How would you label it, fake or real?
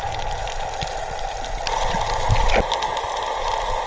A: real